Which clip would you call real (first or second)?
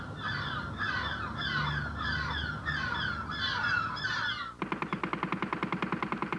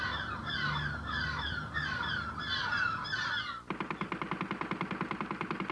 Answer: first